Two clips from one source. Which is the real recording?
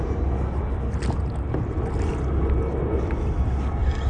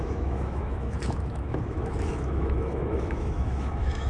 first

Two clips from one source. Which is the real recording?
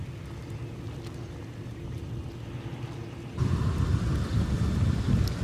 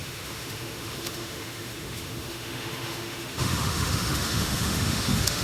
first